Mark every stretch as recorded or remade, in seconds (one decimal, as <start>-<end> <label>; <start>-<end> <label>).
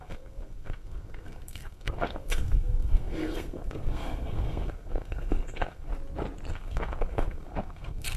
0.0-5.9 remade; 5.9-6.5 recorded; 6.5-8.2 remade